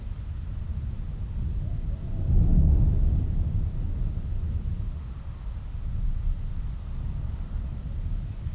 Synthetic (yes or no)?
no